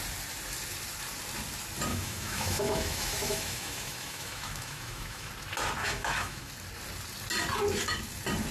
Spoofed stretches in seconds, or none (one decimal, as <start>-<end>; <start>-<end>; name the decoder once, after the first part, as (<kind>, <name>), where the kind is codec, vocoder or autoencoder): 1.9-5.3 (autoencoder, DAC-VAE); 5.8-6.5